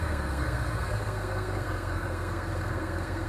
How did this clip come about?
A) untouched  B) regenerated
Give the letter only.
B